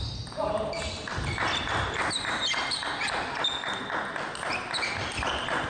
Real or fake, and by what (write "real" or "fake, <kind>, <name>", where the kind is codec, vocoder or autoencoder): real